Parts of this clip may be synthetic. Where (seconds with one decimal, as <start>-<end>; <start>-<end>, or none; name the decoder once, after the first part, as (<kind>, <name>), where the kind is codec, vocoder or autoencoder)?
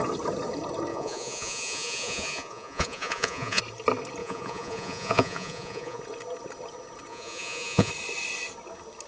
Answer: 0.9-3.6 (vocoder, Vocos); 4.2-6.0; 7.1-7.9